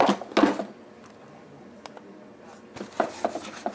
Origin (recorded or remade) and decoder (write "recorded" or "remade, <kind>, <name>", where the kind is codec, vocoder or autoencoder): recorded